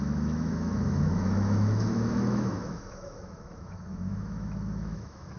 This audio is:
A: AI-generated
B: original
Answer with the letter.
A